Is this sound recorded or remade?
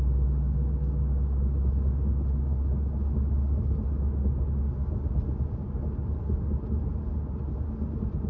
recorded